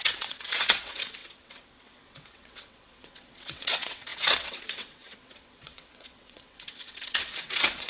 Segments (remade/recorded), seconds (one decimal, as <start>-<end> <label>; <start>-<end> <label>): 0.0-7.9 remade